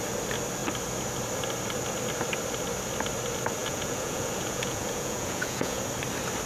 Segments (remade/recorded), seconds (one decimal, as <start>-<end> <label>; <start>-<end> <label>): 0.0-3.6 recorded; 3.6-5.8 remade; 5.8-6.5 recorded